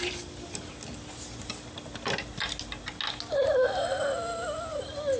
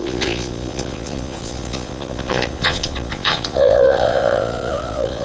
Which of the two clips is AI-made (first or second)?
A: second